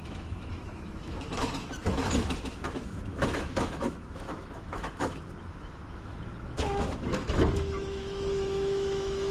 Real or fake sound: fake